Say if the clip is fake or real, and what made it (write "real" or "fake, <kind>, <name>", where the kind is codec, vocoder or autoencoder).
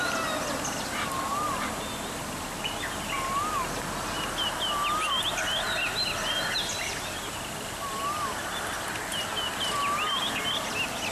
real